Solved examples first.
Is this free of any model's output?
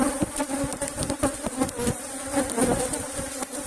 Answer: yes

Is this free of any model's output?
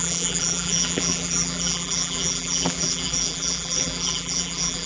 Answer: no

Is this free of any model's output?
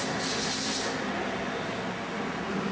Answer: yes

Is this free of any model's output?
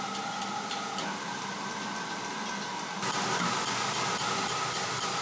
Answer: yes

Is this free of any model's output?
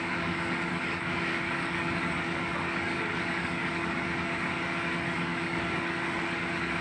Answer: no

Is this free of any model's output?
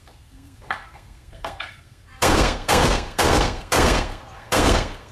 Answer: no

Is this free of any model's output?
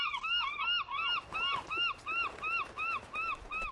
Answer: yes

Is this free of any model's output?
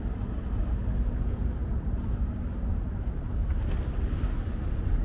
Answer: yes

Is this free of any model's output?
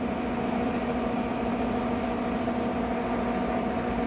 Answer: yes